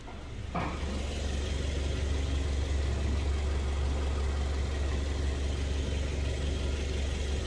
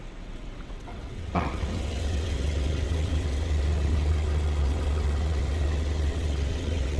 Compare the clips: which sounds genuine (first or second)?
first